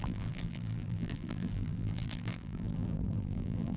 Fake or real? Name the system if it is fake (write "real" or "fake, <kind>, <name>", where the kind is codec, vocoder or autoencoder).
fake, vocoder, BigVGAN v2